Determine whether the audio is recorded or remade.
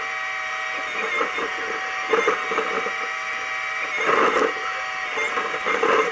recorded